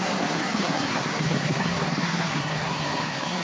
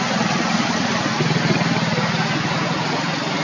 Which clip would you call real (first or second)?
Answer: second